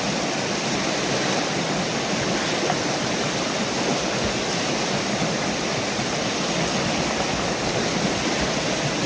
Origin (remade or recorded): recorded